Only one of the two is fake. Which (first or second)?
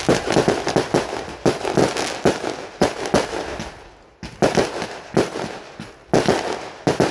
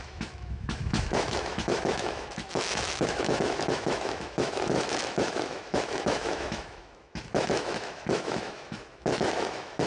second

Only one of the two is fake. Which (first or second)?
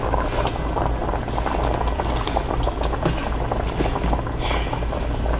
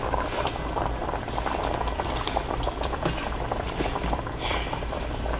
second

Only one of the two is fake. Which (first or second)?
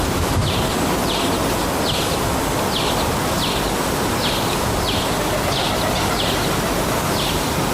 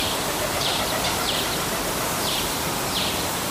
second